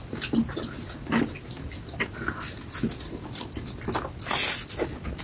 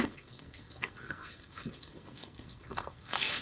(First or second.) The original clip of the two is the first